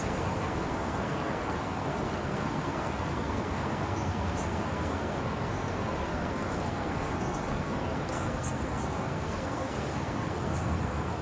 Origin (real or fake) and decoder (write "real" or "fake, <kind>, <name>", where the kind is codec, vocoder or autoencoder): fake, codec, SNAC